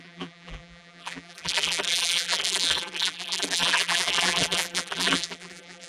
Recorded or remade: remade